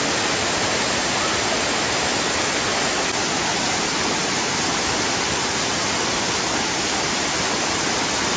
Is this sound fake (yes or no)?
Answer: no